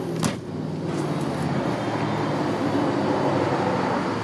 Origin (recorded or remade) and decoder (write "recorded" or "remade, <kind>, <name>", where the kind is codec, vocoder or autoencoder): recorded